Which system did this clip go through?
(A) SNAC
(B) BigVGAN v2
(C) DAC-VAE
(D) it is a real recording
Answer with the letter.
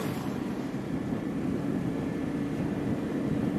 B